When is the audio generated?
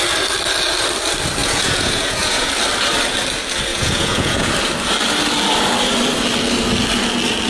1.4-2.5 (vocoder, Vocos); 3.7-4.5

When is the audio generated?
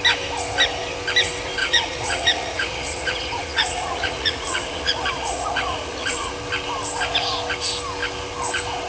1.6-6.3 (vocoder, Vocos)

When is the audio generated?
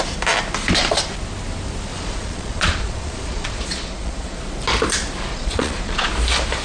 1.9-4.4 (vocoder, Vocos); 5.3-6.1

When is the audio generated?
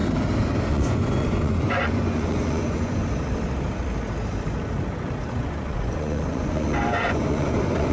0.7-3.0 (vocoder, Vocos); 5.3-7.9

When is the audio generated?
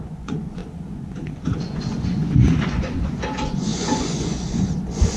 0.0-5.2 (vocoder, Vocos)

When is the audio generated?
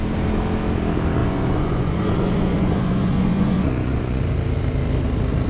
1.2-4.2 (vocoder, Vocos)